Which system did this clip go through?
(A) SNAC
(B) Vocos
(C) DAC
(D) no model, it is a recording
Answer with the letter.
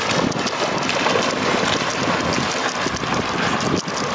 D